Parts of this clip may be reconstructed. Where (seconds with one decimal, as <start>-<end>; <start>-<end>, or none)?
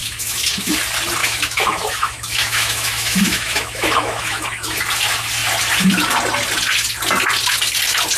0.0-0.7; 1.2-4.8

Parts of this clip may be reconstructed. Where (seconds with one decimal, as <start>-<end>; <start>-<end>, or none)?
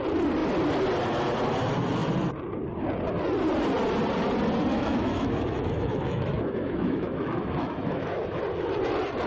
4.7-8.4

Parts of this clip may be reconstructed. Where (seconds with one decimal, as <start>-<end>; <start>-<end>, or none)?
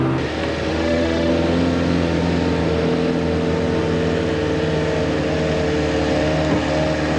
0.7-1.3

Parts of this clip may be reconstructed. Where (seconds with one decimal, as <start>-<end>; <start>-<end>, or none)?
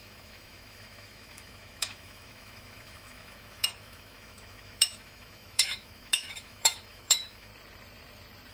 0.0-7.5